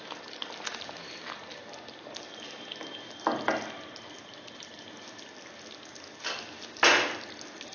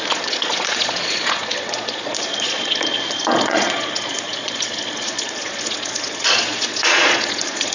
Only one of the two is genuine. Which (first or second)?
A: first